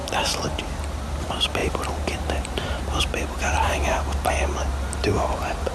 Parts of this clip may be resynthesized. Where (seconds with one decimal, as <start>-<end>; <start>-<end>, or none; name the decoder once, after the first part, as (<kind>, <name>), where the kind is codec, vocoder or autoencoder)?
0.0-0.6 (vocoder, BigVGAN v2); 1.6-4.3